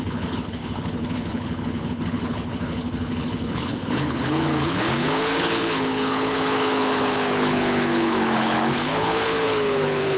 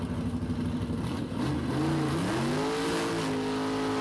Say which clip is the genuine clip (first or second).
second